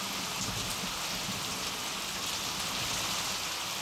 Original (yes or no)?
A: yes